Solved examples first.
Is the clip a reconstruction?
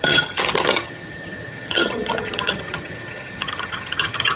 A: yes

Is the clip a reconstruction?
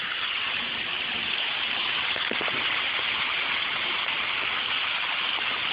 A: yes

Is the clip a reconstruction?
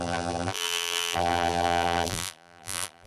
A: yes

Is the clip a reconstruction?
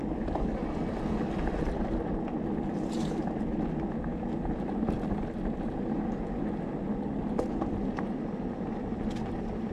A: no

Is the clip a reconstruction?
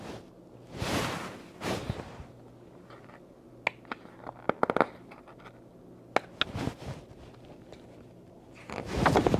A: no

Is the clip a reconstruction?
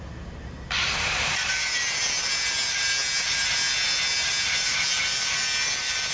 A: no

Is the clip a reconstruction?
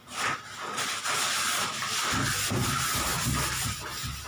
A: no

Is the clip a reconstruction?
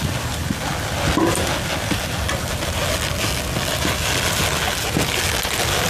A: no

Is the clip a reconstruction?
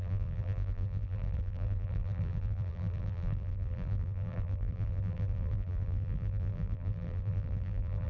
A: yes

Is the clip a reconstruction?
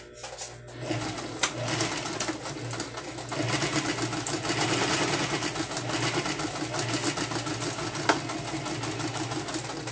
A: no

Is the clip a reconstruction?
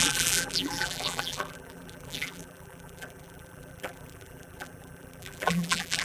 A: yes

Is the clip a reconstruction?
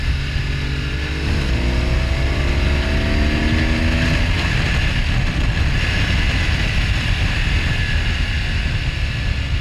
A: no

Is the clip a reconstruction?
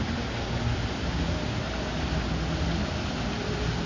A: no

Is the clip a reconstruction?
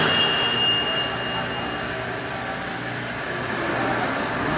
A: no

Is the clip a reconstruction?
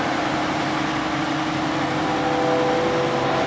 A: no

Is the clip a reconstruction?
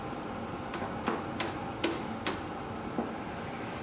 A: no